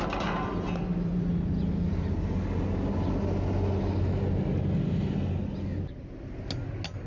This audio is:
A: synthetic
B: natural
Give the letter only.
B